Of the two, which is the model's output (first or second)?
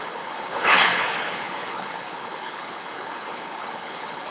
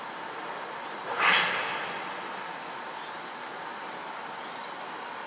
first